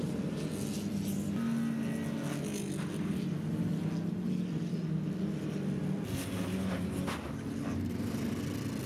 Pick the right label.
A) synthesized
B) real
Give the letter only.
B